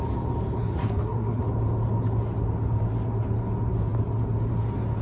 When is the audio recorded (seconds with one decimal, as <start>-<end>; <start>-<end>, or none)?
0.0-0.6; 1.4-5.0